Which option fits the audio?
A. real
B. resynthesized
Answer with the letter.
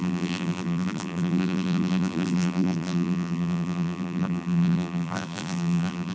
B